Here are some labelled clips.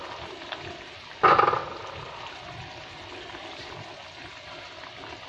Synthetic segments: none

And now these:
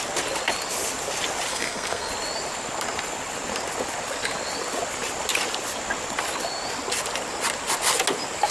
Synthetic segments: 1.5-2.1 (codec, SNAC)

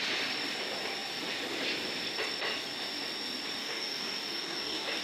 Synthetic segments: 3.6-5.0 (codec, DAC)

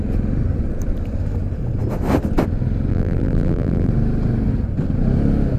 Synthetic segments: 2.9-3.9 (vocoder, BigVGAN v2)

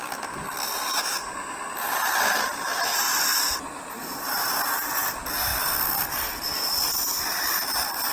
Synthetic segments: 3.3-4.9 (vocoder, BigVGAN v2)

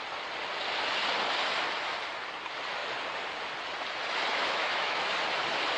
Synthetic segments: 4.3-5.1 (autoencoder, DAC-VAE)